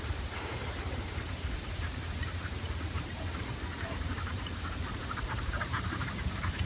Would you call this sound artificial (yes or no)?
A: yes